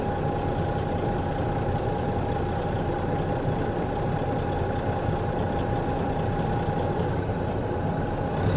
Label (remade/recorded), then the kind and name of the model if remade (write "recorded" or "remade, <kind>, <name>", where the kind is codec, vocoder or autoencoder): recorded